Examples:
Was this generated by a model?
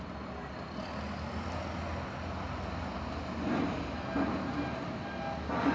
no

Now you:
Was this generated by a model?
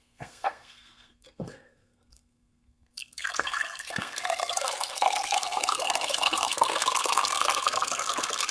yes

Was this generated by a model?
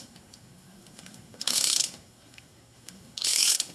yes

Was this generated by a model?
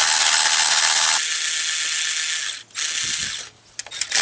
no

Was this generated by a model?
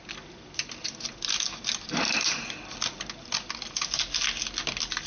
no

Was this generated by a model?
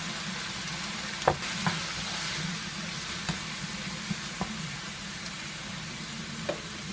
no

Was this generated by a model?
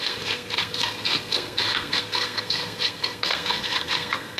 yes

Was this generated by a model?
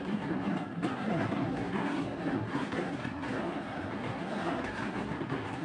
yes